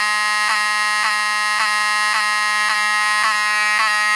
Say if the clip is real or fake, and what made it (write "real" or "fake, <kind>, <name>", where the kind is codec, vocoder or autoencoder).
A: real